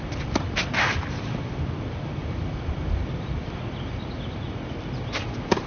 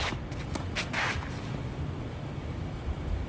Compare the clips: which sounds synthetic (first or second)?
first